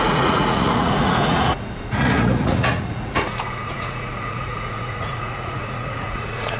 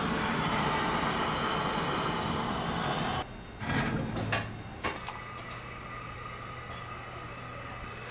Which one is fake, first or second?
first